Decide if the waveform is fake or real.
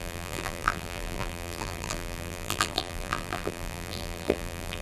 fake